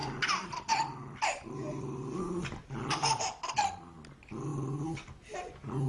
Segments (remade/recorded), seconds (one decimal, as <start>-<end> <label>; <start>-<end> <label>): 0.0-3.5 remade; 3.5-5.9 recorded